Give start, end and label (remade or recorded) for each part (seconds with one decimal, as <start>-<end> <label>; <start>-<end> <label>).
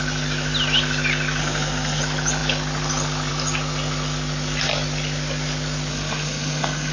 0.0-1.4 recorded; 1.4-2.0 remade; 2.0-5.9 recorded; 5.9-6.9 remade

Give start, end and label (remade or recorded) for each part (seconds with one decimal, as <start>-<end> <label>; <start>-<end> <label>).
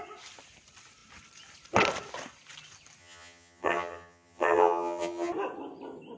0.0-3.0 recorded; 3.0-5.3 remade; 5.3-6.2 recorded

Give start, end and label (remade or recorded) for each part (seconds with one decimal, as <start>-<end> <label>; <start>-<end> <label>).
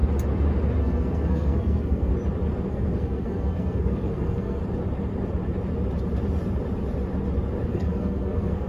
0.0-0.8 recorded; 0.8-2.1 remade; 2.1-2.7 recorded; 2.7-4.6 remade; 4.6-7.7 recorded; 7.7-8.7 remade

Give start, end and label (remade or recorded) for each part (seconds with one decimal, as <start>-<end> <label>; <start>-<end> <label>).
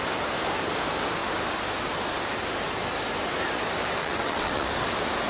0.0-4.0 recorded; 4.0-4.7 remade; 4.7-5.3 recorded